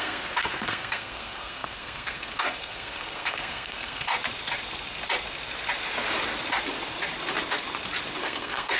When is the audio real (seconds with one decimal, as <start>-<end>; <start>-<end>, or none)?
4.1-8.2